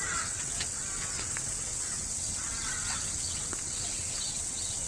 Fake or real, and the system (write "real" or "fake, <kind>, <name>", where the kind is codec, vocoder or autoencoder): fake, vocoder, WaveNeXt